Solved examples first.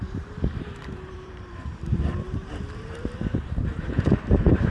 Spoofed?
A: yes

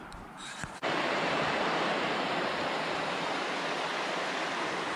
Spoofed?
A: yes